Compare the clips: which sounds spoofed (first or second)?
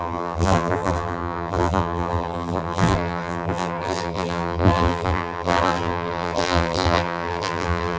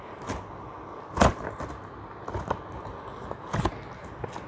first